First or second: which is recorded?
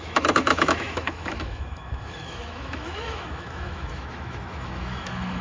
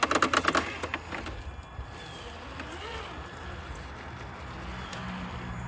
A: second